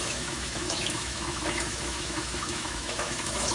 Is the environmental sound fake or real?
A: fake